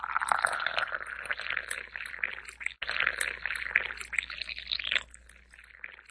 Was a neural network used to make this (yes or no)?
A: no